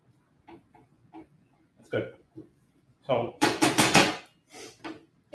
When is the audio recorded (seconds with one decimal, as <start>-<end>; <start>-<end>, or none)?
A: 0.0-0.9; 4.1-5.3